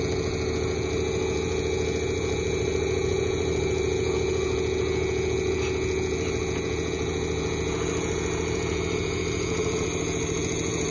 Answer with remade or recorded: remade